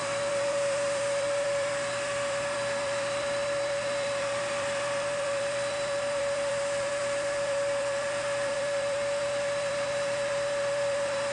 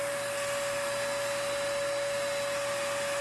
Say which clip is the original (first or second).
second